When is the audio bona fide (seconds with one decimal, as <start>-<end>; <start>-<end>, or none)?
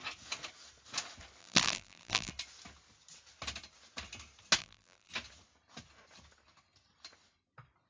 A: 0.0-1.4; 2.3-4.6; 5.1-7.9